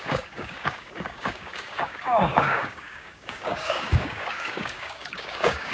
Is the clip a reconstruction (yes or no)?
yes